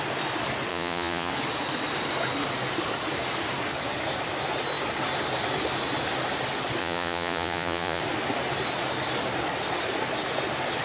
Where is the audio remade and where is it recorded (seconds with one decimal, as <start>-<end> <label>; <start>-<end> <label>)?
0.0-0.7 recorded; 0.7-1.3 remade; 1.3-6.8 recorded; 6.8-8.0 remade; 8.0-10.8 recorded